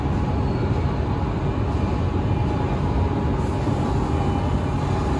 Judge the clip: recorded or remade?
recorded